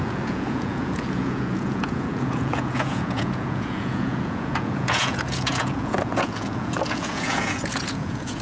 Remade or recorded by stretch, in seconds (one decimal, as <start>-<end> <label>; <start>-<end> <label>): 0.0-8.4 remade